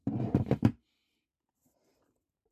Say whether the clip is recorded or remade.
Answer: remade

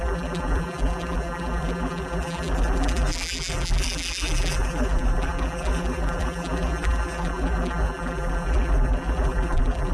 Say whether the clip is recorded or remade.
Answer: remade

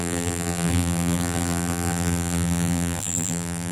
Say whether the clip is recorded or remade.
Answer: remade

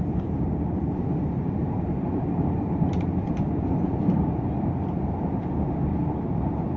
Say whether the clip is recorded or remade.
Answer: remade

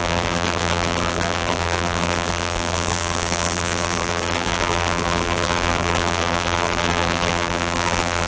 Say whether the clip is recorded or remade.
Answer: remade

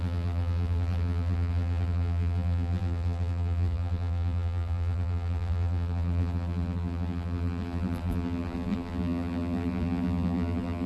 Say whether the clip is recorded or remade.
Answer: remade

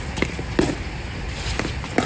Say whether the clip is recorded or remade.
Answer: recorded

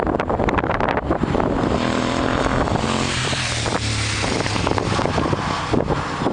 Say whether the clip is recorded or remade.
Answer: remade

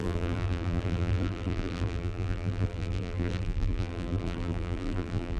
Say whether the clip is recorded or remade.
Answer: remade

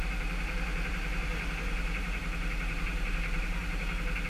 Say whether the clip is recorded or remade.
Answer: remade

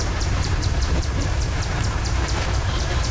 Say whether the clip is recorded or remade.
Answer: remade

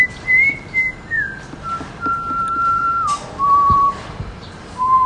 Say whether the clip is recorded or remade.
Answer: remade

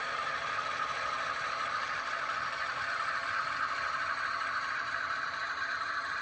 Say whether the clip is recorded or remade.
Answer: recorded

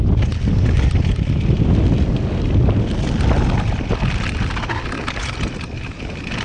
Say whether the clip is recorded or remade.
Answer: recorded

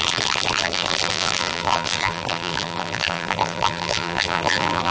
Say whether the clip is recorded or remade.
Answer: remade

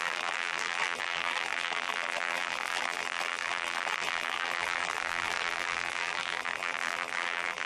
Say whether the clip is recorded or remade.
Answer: remade